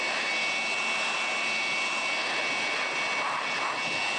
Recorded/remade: recorded